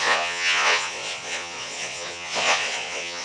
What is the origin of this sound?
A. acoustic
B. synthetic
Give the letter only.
B